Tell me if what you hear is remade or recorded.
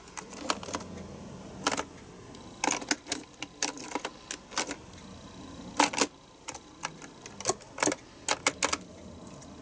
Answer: recorded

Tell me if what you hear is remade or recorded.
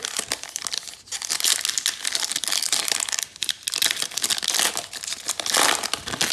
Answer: recorded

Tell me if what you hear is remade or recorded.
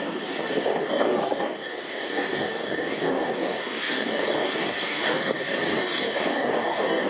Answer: remade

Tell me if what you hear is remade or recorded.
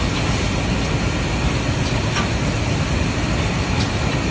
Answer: recorded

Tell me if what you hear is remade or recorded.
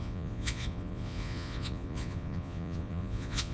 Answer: remade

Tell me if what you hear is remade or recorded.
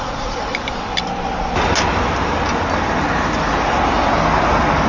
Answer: recorded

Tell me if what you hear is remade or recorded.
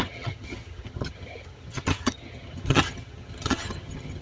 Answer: remade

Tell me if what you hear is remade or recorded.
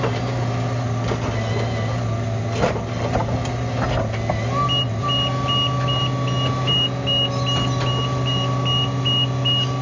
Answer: recorded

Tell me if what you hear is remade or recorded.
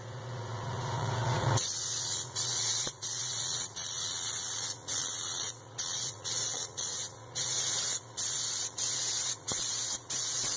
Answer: remade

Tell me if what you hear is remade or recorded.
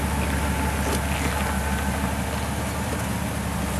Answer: recorded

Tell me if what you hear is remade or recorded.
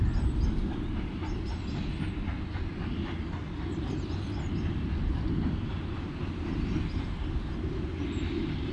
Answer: recorded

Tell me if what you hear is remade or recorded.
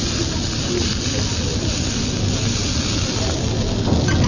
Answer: recorded